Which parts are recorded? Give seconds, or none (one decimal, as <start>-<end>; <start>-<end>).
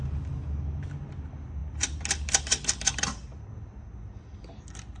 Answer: 0.0-5.0